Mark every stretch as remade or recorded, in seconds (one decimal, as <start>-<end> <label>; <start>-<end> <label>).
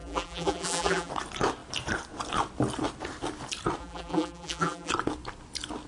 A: 0.0-1.1 remade; 1.1-3.8 recorded; 3.8-4.9 remade; 4.9-5.9 recorded